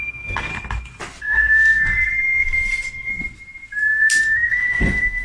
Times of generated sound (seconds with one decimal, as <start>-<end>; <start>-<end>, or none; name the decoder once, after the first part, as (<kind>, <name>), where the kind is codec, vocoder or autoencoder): 0.0-0.5 (codec, SNAC); 1.2-3.1; 4.2-5.2